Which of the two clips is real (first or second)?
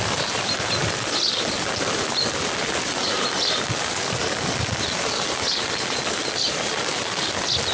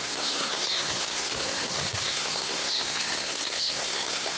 first